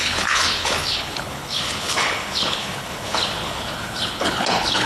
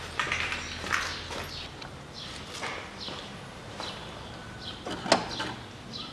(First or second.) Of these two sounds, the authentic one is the second